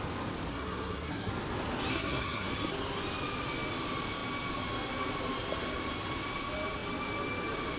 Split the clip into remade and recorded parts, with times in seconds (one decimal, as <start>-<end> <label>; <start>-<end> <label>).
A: 0.0-0.5 recorded; 0.5-1.3 remade; 1.3-1.9 recorded; 1.9-2.5 remade; 2.5-7.8 recorded